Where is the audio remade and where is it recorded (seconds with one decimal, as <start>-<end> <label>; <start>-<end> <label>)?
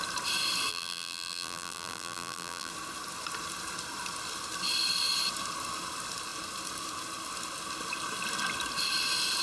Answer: 0.0-0.7 recorded; 0.7-2.7 remade; 2.7-9.4 recorded